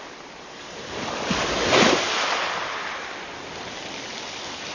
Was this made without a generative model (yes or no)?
yes